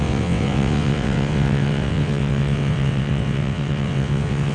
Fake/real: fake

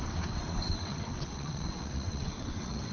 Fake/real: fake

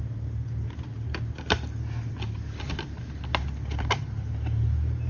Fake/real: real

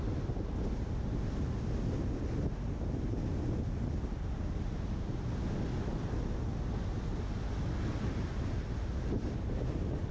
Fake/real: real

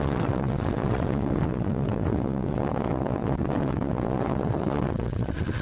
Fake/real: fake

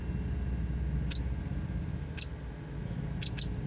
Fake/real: real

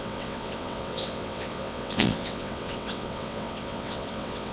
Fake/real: fake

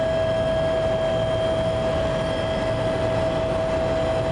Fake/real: real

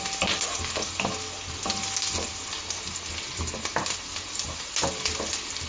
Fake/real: real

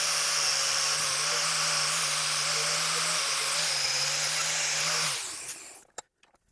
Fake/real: real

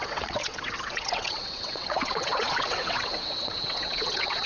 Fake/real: fake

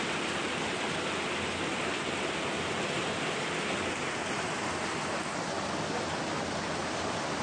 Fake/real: real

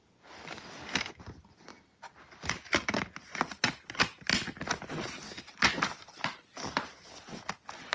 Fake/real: real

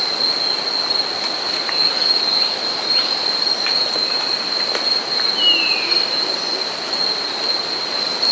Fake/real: real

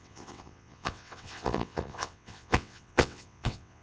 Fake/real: fake